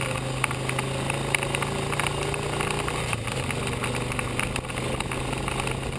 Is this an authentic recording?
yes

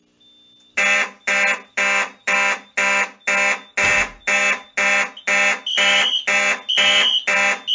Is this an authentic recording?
yes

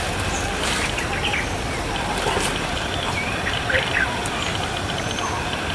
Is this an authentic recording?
yes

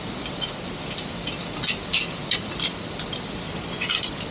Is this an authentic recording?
yes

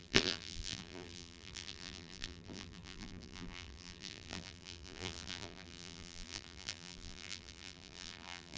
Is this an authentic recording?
no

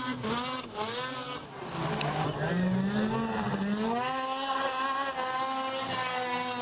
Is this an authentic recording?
yes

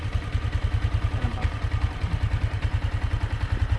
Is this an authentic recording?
yes